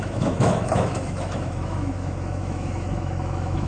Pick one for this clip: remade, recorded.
remade